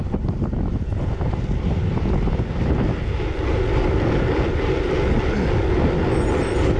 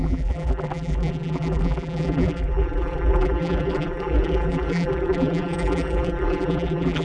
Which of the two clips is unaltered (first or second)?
first